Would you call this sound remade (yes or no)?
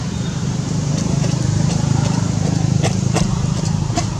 yes